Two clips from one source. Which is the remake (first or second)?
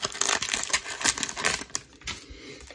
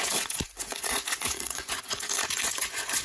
second